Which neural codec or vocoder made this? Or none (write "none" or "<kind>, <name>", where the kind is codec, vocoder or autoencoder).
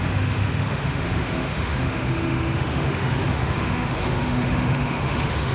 autoencoder, DAC-VAE